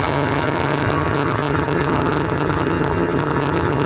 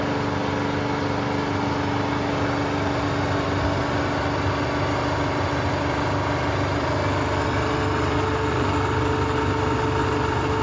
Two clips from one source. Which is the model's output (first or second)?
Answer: first